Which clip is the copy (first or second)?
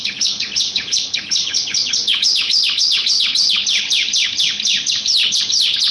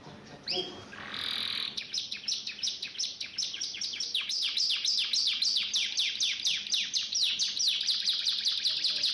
first